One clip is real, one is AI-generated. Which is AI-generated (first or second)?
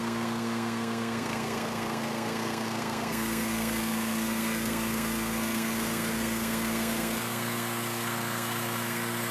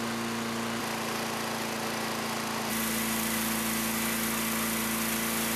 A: first